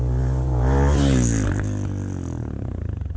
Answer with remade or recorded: recorded